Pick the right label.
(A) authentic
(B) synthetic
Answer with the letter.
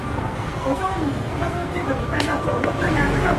B